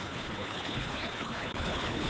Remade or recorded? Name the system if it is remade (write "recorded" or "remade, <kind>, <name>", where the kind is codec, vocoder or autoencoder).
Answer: remade, codec, HILCodec